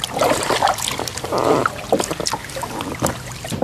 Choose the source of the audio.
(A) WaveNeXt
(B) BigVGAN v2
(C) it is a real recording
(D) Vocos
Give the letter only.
C